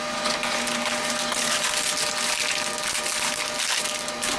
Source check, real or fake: real